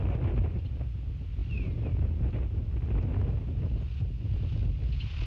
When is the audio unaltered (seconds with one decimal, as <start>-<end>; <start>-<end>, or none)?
0.0-5.3